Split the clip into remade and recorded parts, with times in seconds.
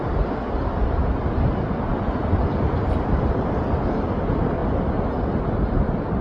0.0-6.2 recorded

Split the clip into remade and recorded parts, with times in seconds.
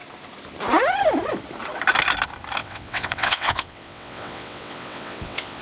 0.0-2.6 recorded; 2.6-5.6 remade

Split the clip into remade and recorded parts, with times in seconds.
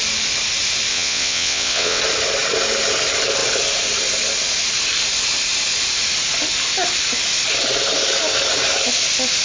0.0-0.9 recorded; 0.9-2.0 remade; 2.0-9.4 recorded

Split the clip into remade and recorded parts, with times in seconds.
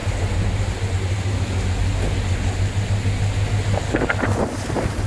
0.0-5.1 recorded